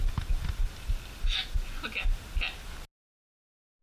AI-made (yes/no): no